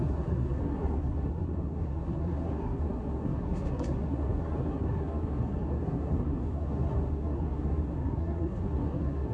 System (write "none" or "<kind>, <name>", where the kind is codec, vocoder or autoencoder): codec, SNAC